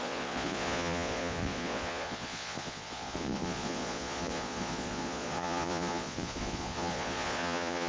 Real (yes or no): no